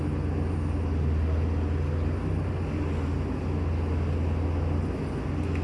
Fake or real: real